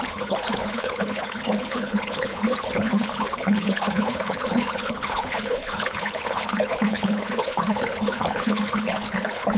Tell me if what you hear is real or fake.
fake